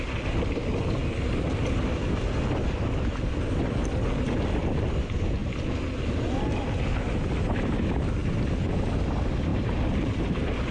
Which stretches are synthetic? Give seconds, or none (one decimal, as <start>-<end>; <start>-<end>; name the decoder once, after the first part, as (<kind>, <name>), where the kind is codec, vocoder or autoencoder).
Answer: 9.5-10.7 (vocoder, BigVGAN v2)

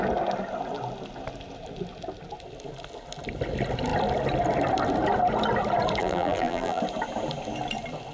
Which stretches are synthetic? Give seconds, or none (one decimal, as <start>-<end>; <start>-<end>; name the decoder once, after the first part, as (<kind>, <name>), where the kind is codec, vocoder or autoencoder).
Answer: 6.0-6.8 (vocoder, BigVGAN v2)

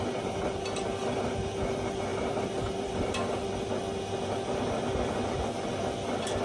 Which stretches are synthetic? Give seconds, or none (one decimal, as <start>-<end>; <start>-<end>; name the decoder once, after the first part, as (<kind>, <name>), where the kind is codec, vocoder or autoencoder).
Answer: 2.1-3.7 (vocoder, BigVGAN v2)